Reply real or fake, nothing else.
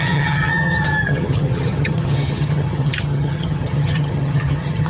fake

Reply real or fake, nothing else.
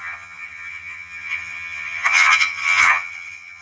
fake